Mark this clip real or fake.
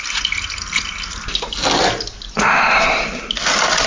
real